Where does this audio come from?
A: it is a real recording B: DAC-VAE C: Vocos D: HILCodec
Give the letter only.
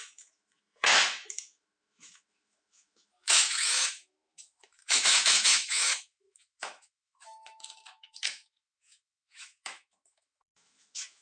B